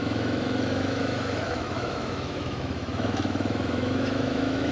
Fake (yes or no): yes